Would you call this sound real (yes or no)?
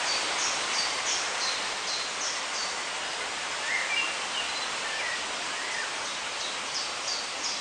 yes